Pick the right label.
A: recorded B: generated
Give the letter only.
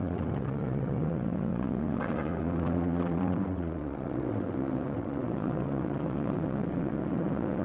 B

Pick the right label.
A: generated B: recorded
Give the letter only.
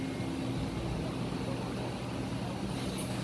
B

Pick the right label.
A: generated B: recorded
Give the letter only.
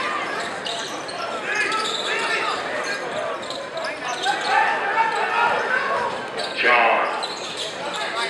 B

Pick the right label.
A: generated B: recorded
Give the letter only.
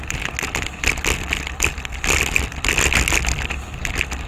B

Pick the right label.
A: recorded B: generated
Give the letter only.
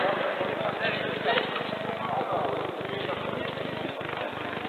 A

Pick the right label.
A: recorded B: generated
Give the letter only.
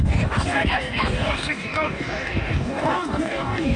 B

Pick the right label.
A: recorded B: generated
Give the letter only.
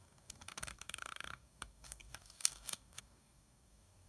B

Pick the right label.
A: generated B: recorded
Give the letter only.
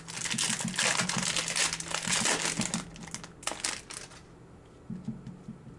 B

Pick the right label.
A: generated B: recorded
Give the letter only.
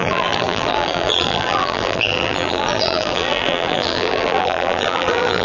A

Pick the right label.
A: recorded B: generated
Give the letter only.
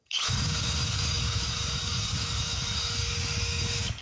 B